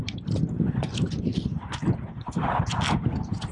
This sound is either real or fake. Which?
fake